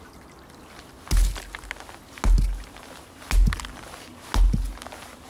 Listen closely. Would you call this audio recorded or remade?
recorded